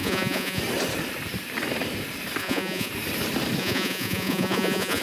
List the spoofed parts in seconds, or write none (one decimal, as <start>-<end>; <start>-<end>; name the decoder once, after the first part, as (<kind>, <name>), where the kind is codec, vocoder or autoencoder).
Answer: 0.0-0.6 (vocoder, Vocos); 2.4-2.9; 3.6-5.0